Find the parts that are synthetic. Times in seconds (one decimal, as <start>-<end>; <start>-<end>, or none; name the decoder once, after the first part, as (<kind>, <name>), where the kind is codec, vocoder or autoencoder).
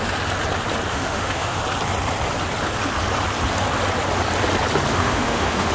0.9-1.6 (autoencoder, DAC-VAE); 4.9-5.7